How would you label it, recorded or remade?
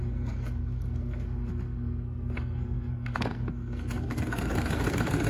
remade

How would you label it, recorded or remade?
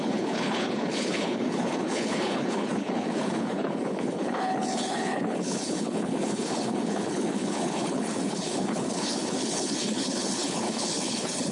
remade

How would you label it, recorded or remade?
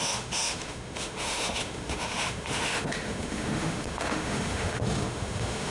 remade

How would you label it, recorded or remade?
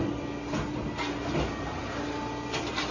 recorded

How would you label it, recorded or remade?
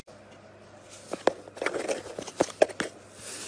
recorded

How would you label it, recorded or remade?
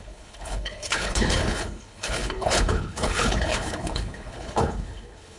remade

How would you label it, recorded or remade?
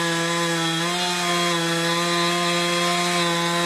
recorded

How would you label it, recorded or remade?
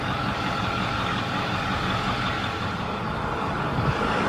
remade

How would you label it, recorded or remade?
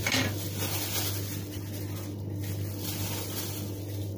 recorded